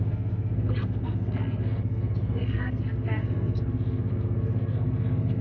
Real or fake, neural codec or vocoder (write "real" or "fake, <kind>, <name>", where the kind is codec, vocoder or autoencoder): fake, codec, SNAC